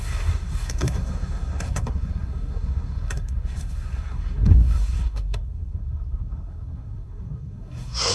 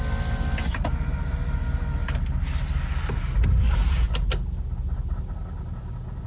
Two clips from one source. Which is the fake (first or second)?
first